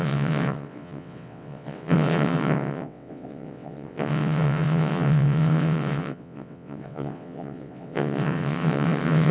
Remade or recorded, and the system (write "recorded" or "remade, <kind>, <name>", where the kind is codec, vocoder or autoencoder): remade, vocoder, WaveNeXt